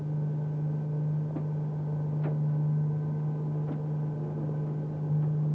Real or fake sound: real